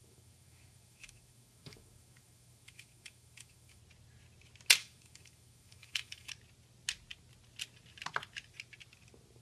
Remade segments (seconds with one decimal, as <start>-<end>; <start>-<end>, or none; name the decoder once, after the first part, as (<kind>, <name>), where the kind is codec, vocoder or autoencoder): 0.0-3.8 (autoencoder, DAC-VAE); 4.8-6.3